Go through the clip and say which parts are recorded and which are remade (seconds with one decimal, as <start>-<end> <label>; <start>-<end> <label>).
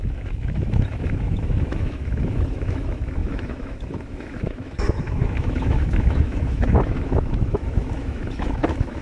0.0-9.0 remade